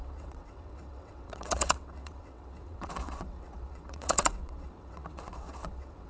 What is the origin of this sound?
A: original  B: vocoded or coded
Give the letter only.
B